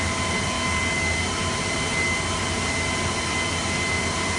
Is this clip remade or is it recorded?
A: recorded